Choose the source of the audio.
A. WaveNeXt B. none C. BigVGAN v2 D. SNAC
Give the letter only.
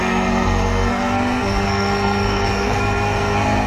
D